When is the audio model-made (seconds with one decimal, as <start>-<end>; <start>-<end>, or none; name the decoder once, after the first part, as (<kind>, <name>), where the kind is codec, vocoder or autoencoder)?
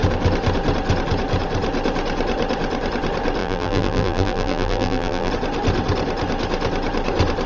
3.4-5.3 (vocoder, BigVGAN v2)